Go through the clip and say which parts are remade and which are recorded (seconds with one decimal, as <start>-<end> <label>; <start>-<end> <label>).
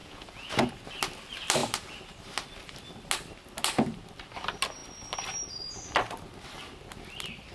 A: 0.0-0.7 remade; 0.7-7.5 recorded